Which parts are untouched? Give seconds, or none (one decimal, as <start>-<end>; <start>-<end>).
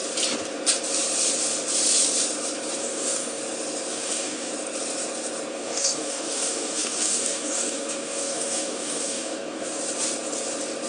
0.0-2.8; 3.4-3.9; 4.5-5.5; 9.8-10.9